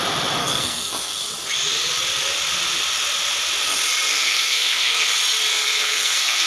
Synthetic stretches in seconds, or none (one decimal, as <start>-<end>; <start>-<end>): 0.4-1.2; 4.1-5.1; 5.5-6.5